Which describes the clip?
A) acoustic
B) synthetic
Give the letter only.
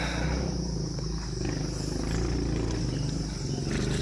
A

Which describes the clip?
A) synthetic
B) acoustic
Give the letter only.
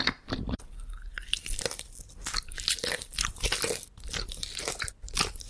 A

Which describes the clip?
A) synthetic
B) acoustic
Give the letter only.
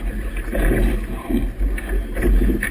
B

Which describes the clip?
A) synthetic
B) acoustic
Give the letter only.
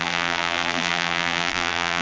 A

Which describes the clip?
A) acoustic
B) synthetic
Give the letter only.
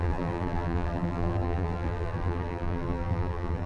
B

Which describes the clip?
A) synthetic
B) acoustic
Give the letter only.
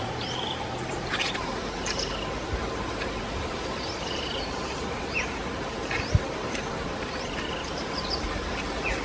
A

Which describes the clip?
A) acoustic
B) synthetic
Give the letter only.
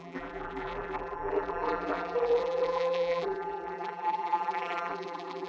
B